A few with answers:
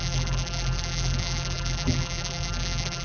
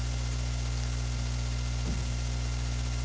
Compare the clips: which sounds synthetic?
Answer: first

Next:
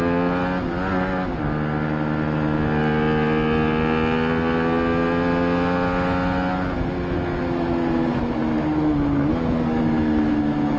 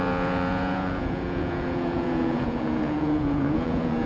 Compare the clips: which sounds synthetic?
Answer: second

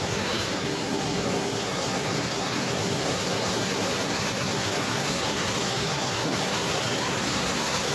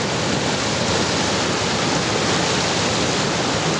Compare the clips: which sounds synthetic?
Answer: first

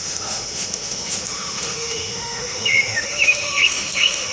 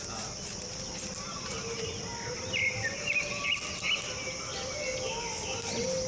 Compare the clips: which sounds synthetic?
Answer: first